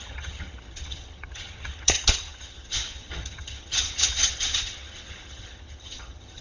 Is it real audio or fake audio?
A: fake